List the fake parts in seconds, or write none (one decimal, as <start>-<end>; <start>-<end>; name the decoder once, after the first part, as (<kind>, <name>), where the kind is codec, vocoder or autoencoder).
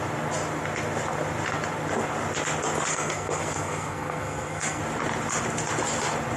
2.9-4.8 (codec, SNAC)